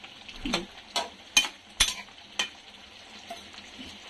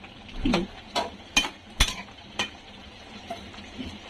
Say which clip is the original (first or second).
first